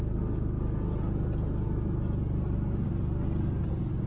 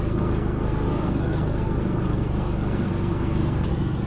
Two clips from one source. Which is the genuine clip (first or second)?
first